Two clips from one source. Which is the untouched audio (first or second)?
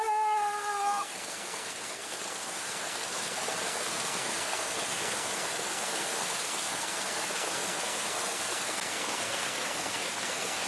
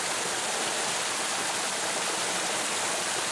second